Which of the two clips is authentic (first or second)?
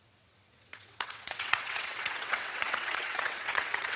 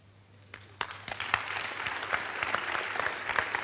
second